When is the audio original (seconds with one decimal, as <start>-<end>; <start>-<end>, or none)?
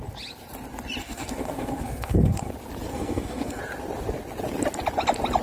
0.0-1.0; 2.5-2.9; 3.6-5.4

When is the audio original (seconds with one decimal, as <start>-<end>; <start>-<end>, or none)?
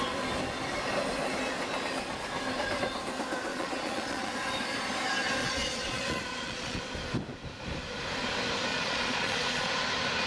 0.0-3.5; 4.3-5.4; 6.8-8.7; 9.7-10.3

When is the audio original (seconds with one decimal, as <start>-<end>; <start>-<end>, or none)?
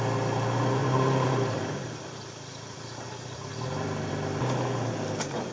0.0-0.8; 4.1-5.5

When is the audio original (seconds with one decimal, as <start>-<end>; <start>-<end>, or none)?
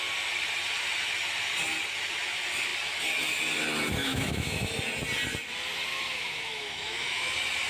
0.0-4.0; 4.8-5.9; 7.3-7.7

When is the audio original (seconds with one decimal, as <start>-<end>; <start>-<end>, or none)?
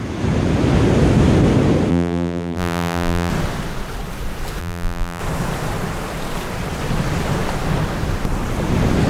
0.0-1.9; 3.3-4.6; 5.2-9.1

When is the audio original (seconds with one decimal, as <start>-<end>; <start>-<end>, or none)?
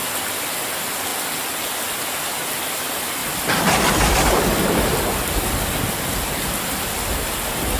0.7-3.2; 5.0-7.8